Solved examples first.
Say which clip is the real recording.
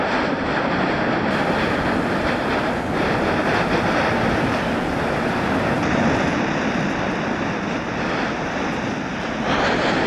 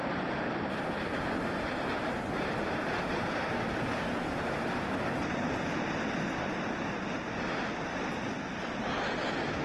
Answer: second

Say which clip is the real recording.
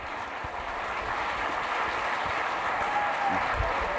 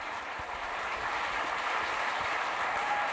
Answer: first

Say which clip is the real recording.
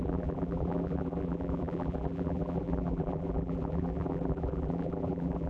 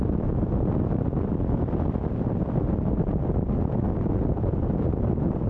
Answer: second